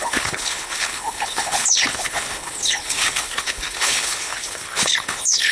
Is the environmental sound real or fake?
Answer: fake